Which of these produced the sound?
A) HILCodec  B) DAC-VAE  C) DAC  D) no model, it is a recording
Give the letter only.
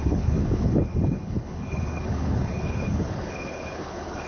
A